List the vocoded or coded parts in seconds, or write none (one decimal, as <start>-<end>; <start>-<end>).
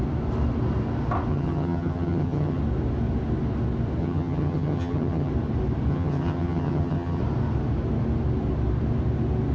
1.3-2.6; 4.0-5.3; 5.9-7.2